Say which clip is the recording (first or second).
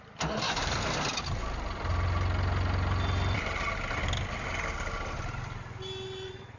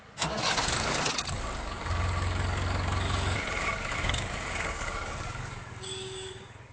first